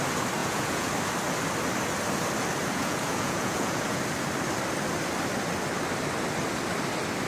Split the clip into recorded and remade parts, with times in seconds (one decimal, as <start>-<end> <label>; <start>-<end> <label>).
0.0-0.4 recorded; 0.4-0.9 remade; 0.9-2.6 recorded; 2.6-4.0 remade; 4.0-7.3 recorded